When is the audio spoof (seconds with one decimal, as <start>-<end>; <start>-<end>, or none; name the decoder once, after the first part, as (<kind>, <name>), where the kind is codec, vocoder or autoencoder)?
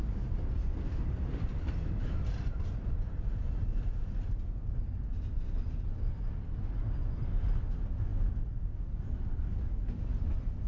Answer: none